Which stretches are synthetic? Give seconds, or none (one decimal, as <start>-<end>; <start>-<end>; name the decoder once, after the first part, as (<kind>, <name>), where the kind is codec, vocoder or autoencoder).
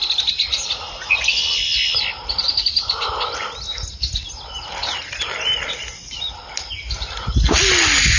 none